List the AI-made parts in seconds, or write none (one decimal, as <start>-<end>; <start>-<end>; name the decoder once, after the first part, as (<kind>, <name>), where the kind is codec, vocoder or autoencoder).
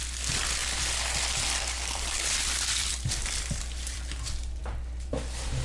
0.6-4.0 (vocoder, BigVGAN v2)